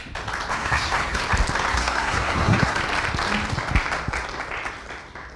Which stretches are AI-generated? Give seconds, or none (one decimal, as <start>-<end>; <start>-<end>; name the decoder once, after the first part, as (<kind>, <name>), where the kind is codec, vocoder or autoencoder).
0.5-1.2 (codec, SNAC); 1.7-2.8